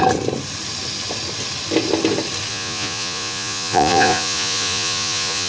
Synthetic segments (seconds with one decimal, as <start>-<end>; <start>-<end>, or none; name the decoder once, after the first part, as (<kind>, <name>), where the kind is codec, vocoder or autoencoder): 2.5-5.5 (vocoder, Vocos)